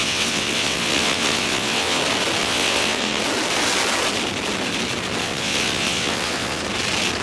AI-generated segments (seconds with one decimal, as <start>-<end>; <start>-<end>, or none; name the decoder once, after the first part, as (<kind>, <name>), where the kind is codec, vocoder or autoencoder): 0.0-2.0 (vocoder, WaveNeXt); 2.4-3.2; 5.2-6.6